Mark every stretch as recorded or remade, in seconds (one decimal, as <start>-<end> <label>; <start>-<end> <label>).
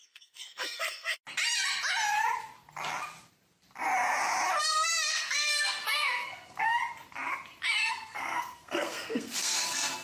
0.0-1.2 remade; 1.2-4.6 recorded; 4.6-6.8 remade; 6.8-7.9 recorded; 7.9-10.0 remade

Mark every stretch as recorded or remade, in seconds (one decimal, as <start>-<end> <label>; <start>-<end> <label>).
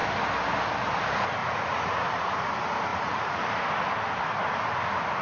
0.0-1.4 recorded; 1.4-2.5 remade; 2.5-2.9 recorded; 2.9-3.4 remade; 3.4-5.2 recorded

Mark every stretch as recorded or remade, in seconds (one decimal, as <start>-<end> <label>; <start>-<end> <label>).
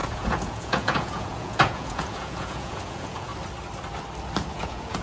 0.0-3.3 remade; 3.3-4.5 recorded; 4.5-5.0 remade